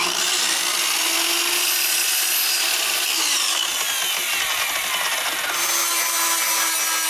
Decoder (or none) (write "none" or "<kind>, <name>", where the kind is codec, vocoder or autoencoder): none